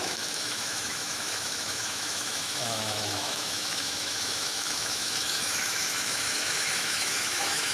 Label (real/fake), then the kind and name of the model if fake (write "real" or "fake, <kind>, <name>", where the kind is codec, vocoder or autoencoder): fake, autoencoder, DAC-VAE